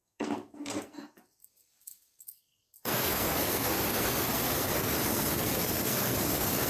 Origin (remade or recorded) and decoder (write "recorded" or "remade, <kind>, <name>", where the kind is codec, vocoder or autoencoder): remade, codec, SNAC